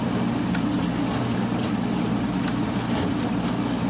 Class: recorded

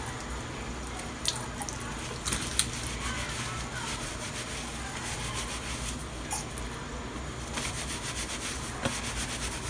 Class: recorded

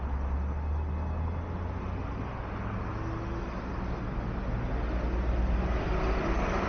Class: recorded